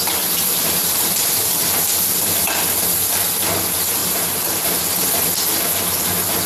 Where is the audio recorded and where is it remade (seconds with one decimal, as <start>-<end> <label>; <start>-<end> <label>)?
0.0-0.6 recorded; 0.6-1.8 remade; 1.8-4.0 recorded; 4.0-4.8 remade; 4.8-6.5 recorded